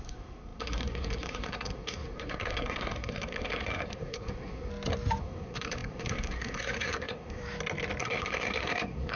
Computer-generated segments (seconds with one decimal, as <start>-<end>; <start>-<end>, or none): 0.0-4.7; 5.2-7.4; 8.0-9.2